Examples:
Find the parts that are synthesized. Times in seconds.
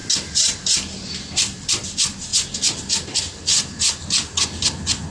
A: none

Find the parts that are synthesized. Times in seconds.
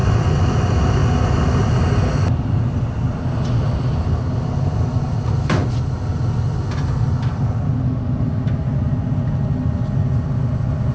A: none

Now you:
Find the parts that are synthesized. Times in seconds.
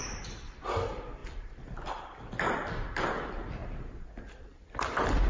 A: 0.0-3.6 (vocoder, BigVGAN v2); 4.2-5.3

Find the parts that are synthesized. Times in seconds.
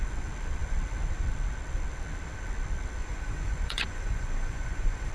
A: 3.0-5.1 (vocoder, Vocos)